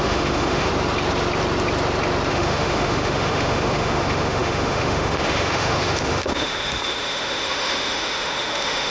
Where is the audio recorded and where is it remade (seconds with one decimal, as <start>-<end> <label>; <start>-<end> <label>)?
0.0-0.7 remade; 0.7-2.3 recorded; 2.3-8.9 remade